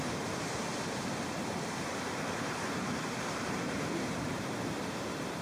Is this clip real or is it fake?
fake